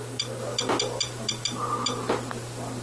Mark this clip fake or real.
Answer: real